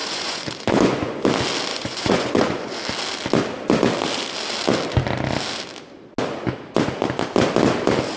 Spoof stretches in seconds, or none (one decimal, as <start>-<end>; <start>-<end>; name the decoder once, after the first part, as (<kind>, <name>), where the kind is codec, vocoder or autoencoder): 0.0-1.2 (vocoder, Vocos); 1.7-2.8